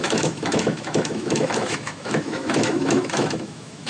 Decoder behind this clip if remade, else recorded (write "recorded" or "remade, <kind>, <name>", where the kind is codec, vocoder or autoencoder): remade, autoencoder, DAC-VAE